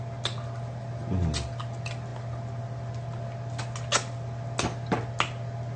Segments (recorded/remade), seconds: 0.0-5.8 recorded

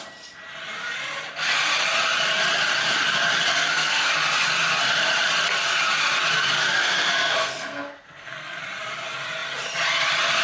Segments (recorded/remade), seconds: 0.0-3.5 recorded; 3.5-4.1 remade; 4.1-6.8 recorded; 6.8-8.6 remade; 8.6-10.4 recorded

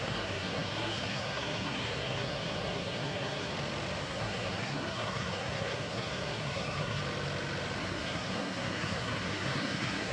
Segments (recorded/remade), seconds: 0.0-3.5 remade; 3.5-4.0 recorded; 4.0-7.0 remade; 7.0-7.8 recorded; 7.8-10.1 remade

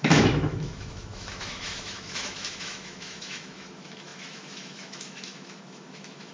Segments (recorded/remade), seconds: 0.0-6.3 remade

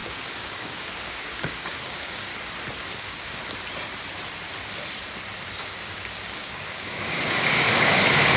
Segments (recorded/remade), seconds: 0.0-2.3 remade; 2.3-2.8 recorded; 2.8-3.4 remade; 3.4-5.6 recorded; 5.6-8.4 remade

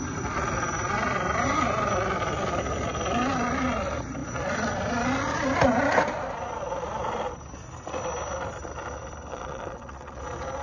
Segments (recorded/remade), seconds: 0.0-9.3 recorded; 9.3-10.2 remade; 10.2-10.6 recorded